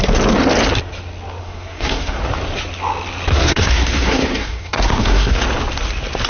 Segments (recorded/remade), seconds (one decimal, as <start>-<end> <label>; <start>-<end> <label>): 0.0-1.4 recorded; 1.4-2.2 remade; 2.2-3.3 recorded; 3.3-5.4 remade; 5.4-6.3 recorded